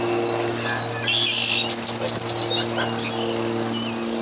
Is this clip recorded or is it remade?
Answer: recorded